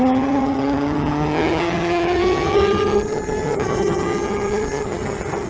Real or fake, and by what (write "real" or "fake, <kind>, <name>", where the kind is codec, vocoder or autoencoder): fake, vocoder, HiFi-GAN